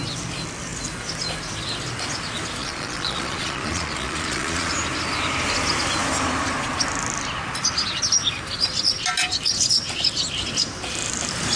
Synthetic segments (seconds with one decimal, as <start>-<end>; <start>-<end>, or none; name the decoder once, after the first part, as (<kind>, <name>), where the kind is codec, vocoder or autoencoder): 2.6-4.7 (vocoder, Vocos)